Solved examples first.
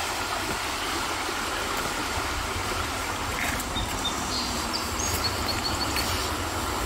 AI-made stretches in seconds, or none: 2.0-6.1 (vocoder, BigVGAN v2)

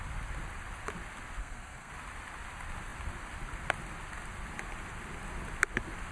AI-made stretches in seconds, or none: 1.4-1.9 (codec, SNAC)

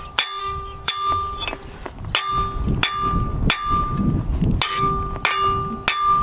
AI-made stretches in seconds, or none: 0.4-0.9 (autoencoder, DAC-VAE)

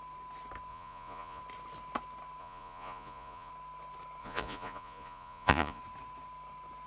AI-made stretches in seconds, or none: 0.7-1.4 (vocoder, Vocos); 2.4-3.5; 4.2-5.8